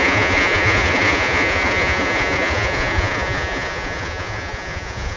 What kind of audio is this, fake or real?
fake